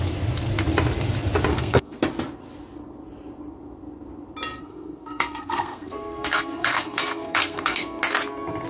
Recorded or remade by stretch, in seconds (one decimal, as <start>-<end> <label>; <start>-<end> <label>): 0.0-1.5 recorded; 1.5-2.0 remade; 2.0-4.6 recorded; 4.6-8.0 remade; 8.0-8.7 recorded